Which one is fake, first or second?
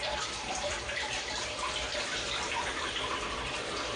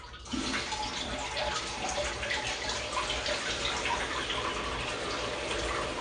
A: first